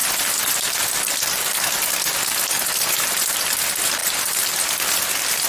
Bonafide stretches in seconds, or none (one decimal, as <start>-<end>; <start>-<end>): 0.0-5.5